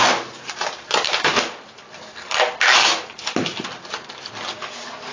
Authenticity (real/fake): real